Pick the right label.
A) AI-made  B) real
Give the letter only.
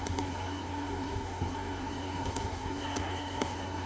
A